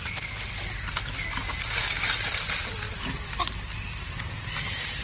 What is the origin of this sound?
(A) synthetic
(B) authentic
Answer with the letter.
B